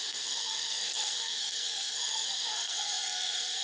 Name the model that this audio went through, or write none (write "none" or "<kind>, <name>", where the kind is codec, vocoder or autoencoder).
codec, SNAC